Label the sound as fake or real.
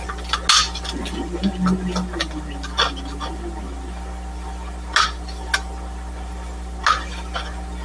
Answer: real